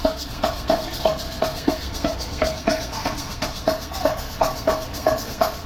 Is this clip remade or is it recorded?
remade